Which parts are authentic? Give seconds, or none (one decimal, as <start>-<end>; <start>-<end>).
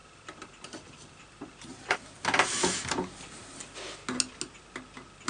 2.0-5.3